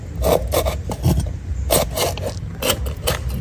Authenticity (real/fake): real